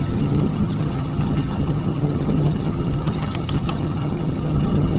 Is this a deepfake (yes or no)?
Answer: yes